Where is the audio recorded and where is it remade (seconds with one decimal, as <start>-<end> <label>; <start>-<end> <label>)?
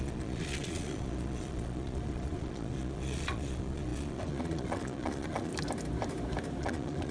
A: 0.0-5.5 remade; 5.5-6.6 recorded; 6.6-7.1 remade